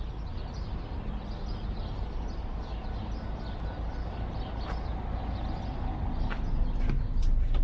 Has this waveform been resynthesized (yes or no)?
no